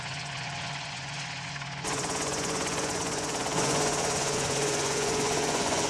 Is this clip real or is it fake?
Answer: fake